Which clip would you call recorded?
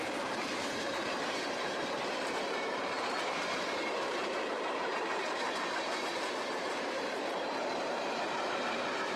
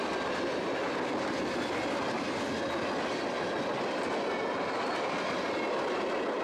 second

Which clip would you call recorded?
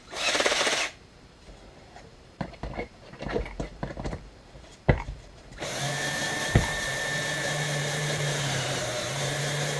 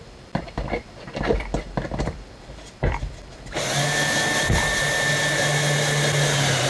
second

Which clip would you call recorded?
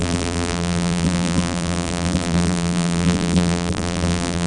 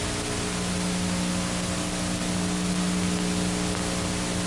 second